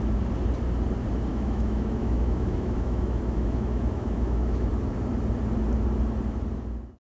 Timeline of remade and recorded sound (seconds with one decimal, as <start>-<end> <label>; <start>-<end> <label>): 0.0-1.3 recorded; 1.3-4.7 remade; 4.7-7.1 recorded